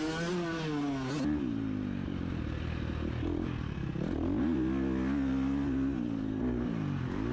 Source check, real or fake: real